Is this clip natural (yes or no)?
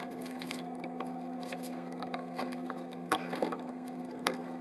no